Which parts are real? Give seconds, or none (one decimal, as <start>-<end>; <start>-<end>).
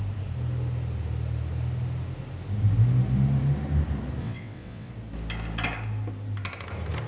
0.0-4.2; 4.9-7.1